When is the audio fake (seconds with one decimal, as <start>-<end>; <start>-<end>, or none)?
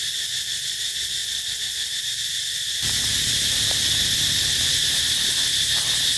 none